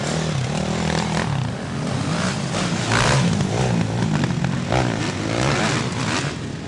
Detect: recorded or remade recorded